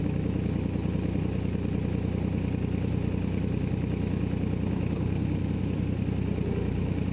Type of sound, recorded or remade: recorded